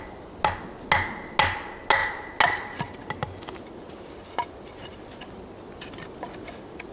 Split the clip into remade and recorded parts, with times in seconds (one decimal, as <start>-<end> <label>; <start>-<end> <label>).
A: 0.0-6.9 recorded